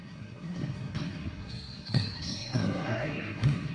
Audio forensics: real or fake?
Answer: fake